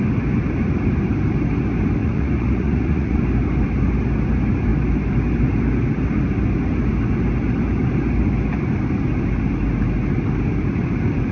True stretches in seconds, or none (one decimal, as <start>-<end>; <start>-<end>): 0.0-2.0; 3.2-11.3